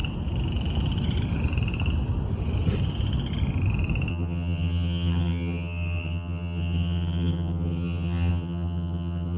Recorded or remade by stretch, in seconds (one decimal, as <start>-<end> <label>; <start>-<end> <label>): 0.0-4.1 recorded; 4.1-9.4 remade